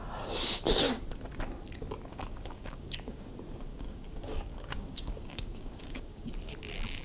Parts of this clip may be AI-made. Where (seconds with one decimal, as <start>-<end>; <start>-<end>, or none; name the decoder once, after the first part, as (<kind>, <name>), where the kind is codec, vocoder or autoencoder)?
2.1-3.3 (codec, DAC); 3.7-6.3